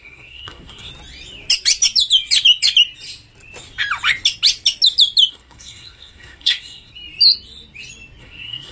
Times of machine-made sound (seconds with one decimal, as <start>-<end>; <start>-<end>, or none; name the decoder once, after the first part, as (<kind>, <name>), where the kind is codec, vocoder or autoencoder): 0.0-0.9 (codec, SNAC); 5.3-6.9; 8.2-8.7